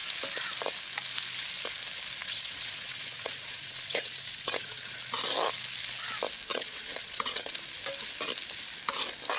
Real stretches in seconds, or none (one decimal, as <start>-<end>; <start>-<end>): 0.0-2.2; 4.9-6.5; 7.5-9.4